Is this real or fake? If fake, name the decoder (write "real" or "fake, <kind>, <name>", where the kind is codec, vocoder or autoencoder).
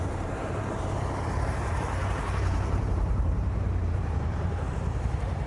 fake, vocoder, BigVGAN v2